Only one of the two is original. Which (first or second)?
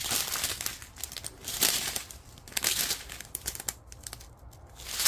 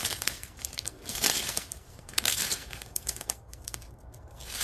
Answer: first